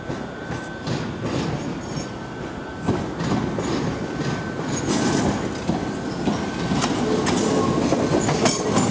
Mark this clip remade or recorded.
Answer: recorded